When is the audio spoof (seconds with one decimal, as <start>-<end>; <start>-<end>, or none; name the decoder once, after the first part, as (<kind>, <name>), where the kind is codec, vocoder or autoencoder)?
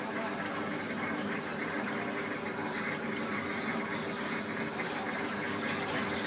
none